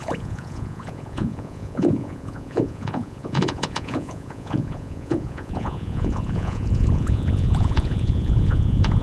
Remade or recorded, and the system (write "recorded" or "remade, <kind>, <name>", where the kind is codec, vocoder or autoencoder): remade, vocoder, Vocos